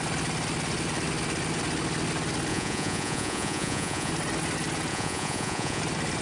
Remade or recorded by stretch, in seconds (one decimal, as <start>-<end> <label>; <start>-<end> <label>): 0.0-2.5 recorded; 2.5-4.1 remade; 4.1-4.9 recorded; 4.9-5.8 remade; 5.8-6.2 recorded

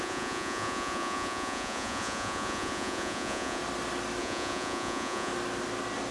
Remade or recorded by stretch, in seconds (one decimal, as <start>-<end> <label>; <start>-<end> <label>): 0.0-3.6 remade; 3.6-4.2 recorded; 4.2-5.3 remade; 5.3-6.1 recorded

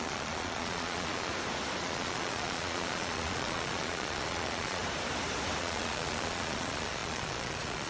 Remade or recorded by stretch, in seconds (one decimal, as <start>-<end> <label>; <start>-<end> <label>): 0.0-1.3 remade; 1.3-1.8 recorded; 1.8-4.8 remade; 4.8-5.6 recorded; 5.6-7.9 remade

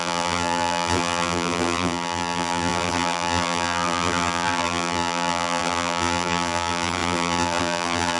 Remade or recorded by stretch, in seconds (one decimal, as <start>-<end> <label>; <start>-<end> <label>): 0.0-8.2 remade

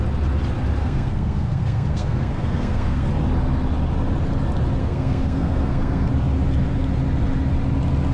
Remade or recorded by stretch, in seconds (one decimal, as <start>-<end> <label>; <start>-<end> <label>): 0.0-0.8 recorded; 0.8-3.1 remade; 3.1-4.8 recorded; 4.8-6.1 remade; 6.1-8.1 recorded

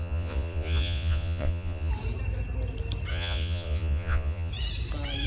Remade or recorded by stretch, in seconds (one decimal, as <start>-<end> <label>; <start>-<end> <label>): 0.0-1.9 remade; 1.9-3.1 recorded; 3.1-4.5 remade; 4.5-5.3 recorded

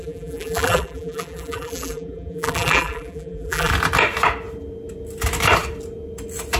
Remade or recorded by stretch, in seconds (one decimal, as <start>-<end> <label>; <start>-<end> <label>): 0.0-3.7 remade; 3.7-6.6 recorded